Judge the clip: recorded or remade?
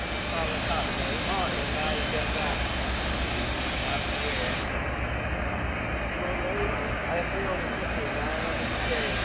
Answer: recorded